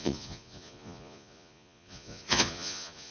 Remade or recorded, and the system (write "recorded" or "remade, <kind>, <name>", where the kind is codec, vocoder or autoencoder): remade, vocoder, Vocos